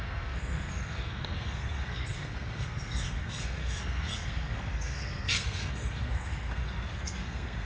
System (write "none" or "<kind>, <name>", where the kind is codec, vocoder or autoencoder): codec, SNAC